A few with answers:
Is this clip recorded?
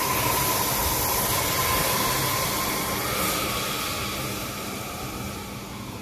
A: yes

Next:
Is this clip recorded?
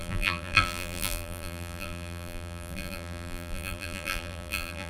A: no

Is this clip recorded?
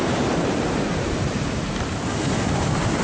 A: no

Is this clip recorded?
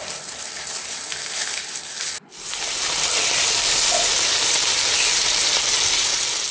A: yes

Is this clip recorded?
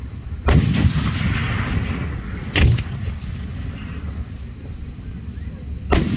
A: yes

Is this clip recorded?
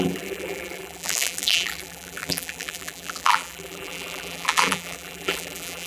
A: no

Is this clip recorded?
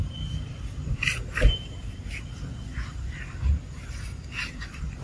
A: yes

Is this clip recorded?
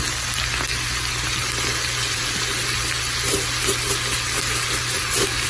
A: yes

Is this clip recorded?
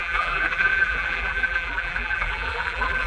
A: no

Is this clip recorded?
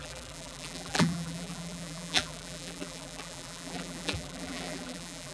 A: no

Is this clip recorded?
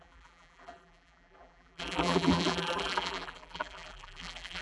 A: no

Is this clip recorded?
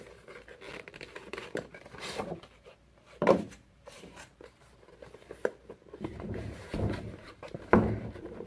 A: no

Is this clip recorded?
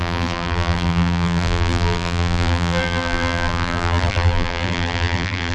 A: no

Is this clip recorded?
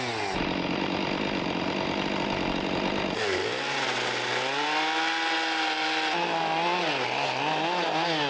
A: yes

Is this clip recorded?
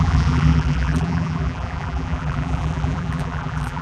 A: no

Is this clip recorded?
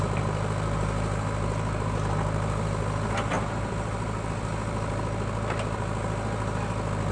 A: yes